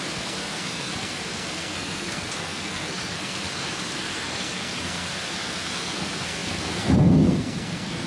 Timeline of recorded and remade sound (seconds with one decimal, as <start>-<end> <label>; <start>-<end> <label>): 0.0-8.1 remade